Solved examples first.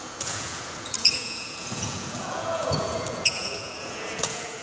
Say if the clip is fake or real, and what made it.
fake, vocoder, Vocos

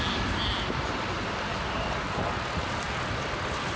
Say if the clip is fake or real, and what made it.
real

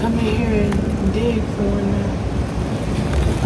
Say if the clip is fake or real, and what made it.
real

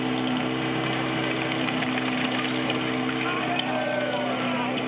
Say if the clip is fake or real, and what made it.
real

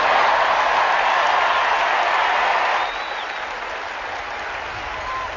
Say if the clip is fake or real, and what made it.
real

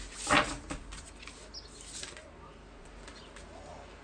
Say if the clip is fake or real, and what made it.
real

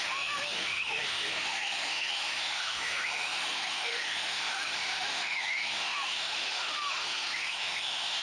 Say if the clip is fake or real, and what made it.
fake, autoencoder, DAC-VAE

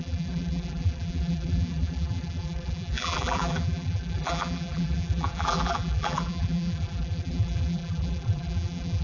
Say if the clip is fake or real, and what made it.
fake, vocoder, BigVGAN v2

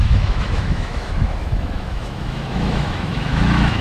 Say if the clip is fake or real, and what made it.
fake, autoencoder, DAC-VAE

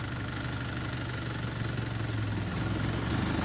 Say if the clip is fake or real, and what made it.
real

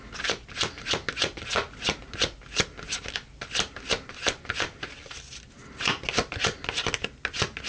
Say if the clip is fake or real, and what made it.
real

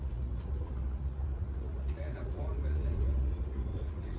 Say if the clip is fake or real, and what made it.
fake, vocoder, Vocos